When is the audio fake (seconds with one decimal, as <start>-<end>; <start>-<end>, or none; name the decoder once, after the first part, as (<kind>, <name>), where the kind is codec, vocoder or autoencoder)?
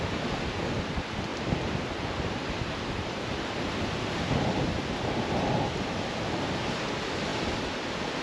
1.3-5.9 (vocoder, BigVGAN v2); 7.3-8.2